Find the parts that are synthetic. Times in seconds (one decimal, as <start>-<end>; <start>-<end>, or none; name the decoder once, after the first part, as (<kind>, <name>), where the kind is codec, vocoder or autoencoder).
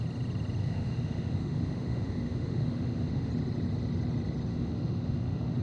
0.6-3.3 (autoencoder, DAC-VAE); 4.5-5.6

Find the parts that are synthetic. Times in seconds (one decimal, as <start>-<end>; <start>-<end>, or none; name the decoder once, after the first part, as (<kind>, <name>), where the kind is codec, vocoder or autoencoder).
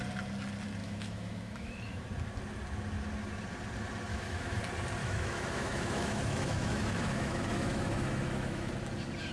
0.8-2.0 (autoencoder, DAC-VAE); 4.1-4.6; 5.0-8.7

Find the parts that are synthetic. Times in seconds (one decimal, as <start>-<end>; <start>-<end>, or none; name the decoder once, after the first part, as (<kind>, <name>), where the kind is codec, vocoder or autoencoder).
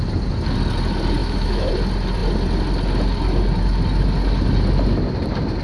1.2-1.7 (autoencoder, DAC-VAE)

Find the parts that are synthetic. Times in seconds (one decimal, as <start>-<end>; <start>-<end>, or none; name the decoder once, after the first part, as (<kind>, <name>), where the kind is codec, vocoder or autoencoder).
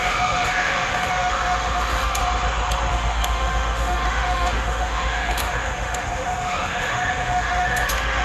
0.0-2.2 (autoencoder, DAC-VAE); 2.9-8.2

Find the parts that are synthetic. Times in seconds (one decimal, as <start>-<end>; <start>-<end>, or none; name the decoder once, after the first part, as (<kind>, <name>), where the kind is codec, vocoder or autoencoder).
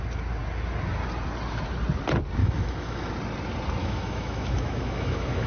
2.4-3.1 (autoencoder, DAC-VAE); 3.8-5.5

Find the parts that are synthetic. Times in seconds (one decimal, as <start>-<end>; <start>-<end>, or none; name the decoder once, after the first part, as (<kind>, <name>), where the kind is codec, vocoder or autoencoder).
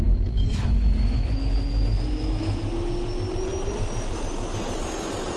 0.0-2.7 (autoencoder, DAC-VAE)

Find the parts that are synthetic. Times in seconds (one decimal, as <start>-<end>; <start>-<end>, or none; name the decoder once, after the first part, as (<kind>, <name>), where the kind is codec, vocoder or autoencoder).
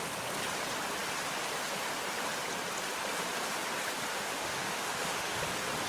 4.1-5.4 (autoencoder, DAC-VAE)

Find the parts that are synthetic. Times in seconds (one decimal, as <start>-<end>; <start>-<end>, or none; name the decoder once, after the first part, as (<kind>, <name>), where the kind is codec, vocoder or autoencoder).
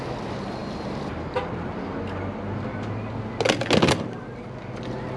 none